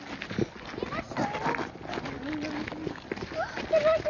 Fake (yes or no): no